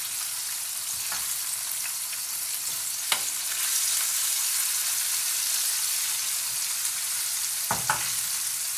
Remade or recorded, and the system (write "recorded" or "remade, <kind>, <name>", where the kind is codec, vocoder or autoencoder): recorded